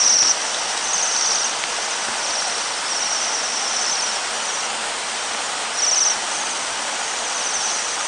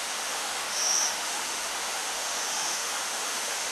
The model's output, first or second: second